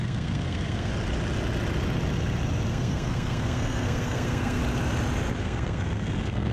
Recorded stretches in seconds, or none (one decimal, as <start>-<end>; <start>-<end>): 0.9-2.7; 4.6-5.4

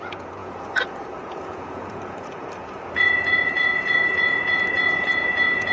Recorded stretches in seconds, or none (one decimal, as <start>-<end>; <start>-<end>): none